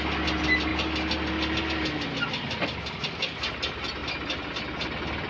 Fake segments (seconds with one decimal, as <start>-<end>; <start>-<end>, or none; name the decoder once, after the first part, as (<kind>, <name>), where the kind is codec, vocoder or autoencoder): none